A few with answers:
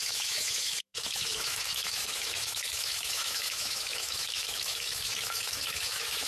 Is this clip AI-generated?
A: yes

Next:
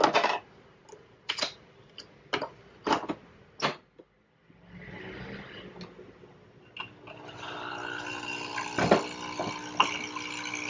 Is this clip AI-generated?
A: no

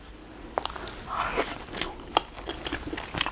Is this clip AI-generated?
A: no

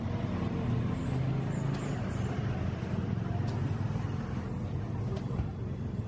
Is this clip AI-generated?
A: no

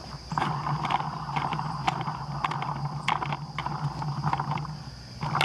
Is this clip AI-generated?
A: no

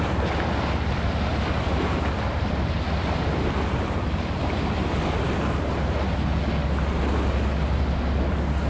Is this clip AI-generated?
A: no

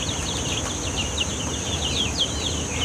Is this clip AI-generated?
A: no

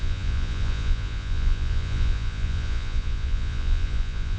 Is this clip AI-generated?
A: yes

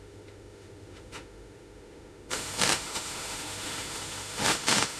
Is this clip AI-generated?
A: yes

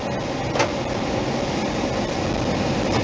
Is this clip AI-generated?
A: no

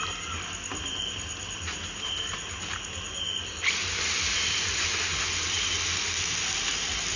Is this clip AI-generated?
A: no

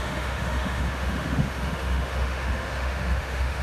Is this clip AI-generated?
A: yes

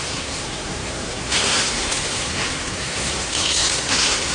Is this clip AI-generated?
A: yes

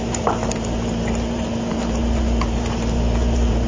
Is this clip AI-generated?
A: yes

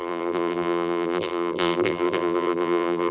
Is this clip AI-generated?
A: yes